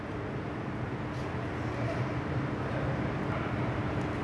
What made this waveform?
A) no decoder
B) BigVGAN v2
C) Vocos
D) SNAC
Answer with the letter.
A